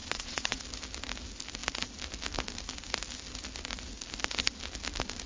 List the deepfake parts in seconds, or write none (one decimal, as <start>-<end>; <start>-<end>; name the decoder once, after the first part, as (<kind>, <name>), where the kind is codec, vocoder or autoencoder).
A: 0.0-0.6 (vocoder, WaveNeXt)